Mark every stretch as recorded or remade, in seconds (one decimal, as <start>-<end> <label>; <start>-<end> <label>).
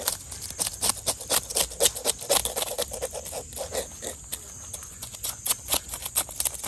0.0-4.8 recorded; 4.8-6.2 remade; 6.2-6.7 recorded